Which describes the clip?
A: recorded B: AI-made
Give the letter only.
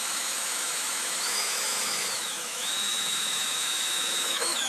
B